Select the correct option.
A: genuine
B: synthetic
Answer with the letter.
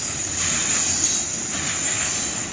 A